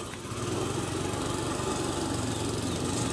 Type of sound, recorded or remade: recorded